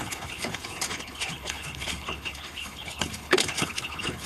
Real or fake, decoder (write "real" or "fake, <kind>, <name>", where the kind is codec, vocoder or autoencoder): fake, codec, HILCodec